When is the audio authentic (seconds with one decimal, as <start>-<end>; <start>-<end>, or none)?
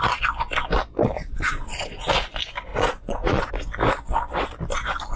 0.0-1.2; 2.1-2.7; 3.5-5.2